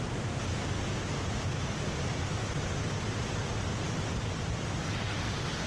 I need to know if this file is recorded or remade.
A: recorded